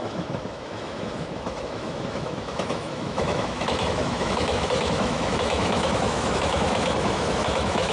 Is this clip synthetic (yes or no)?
yes